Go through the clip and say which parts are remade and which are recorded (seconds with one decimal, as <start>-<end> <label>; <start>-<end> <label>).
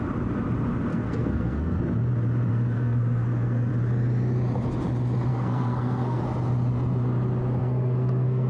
0.0-0.9 recorded; 0.9-1.8 remade; 1.8-2.5 recorded; 2.5-3.7 remade; 3.7-5.3 recorded; 5.3-6.2 remade; 6.2-7.6 recorded; 7.6-8.5 remade